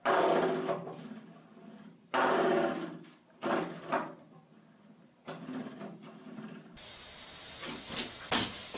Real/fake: real